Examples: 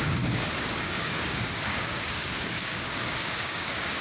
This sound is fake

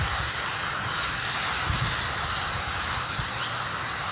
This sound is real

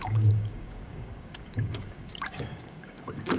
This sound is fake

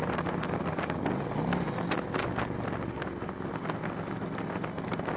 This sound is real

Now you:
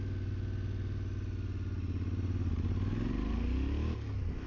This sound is real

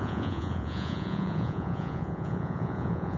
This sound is fake